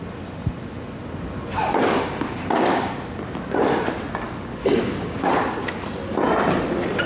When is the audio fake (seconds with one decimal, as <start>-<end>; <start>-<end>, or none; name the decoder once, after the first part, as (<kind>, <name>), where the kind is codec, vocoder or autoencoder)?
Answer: 1.6-2.9 (codec, DAC); 4.6-5.3